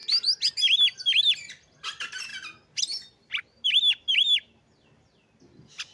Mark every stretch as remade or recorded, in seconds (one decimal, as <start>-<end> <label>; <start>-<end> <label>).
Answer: 0.0-5.9 recorded